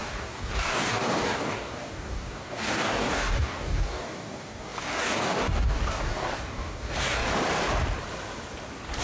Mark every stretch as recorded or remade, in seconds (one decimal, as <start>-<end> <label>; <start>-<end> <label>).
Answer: 0.0-7.3 remade; 7.3-9.0 recorded